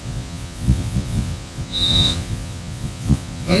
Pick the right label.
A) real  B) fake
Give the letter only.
B